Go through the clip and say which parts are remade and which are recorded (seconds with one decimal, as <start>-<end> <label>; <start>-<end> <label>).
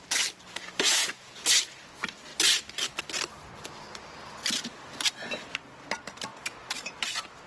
0.0-1.0 recorded; 1.0-1.6 remade; 1.6-7.5 recorded